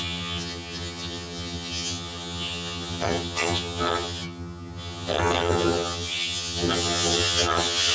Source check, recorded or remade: remade